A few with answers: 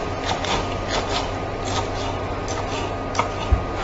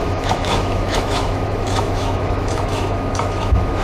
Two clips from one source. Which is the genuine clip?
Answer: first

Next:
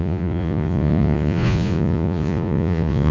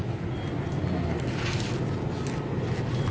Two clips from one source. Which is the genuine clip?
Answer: second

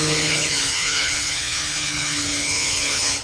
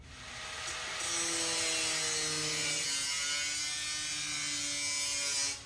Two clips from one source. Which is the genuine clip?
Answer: second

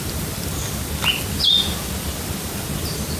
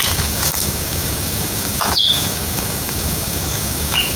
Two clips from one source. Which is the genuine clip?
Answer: first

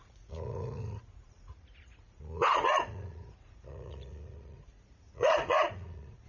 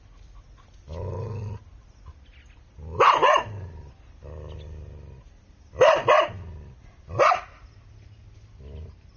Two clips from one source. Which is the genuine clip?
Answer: second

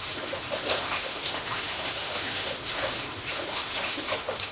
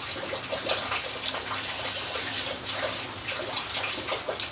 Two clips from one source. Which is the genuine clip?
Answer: second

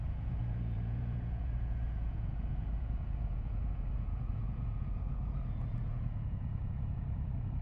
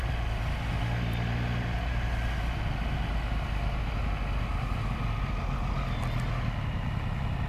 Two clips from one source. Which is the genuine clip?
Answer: second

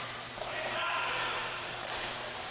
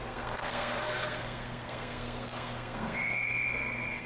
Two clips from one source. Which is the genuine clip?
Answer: first